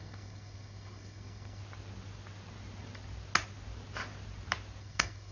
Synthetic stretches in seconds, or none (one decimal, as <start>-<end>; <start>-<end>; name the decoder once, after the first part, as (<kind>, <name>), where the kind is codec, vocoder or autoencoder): 0.0-1.6 (codec, SNAC); 4.8-5.3